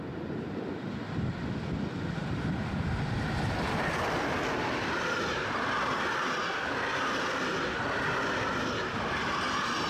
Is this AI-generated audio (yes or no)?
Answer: no